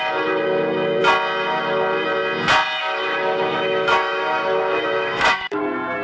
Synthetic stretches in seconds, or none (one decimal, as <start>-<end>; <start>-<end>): 2.8-5.6